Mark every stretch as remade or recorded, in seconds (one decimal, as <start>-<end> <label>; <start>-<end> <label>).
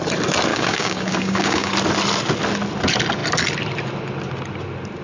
0.0-0.5 recorded; 0.5-1.7 remade; 1.7-5.0 recorded